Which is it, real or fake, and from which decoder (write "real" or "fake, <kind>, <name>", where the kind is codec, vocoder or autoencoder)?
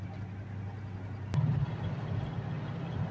real